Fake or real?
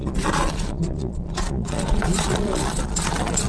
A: fake